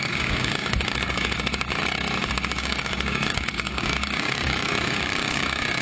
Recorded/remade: remade